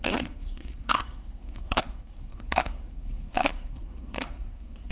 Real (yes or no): no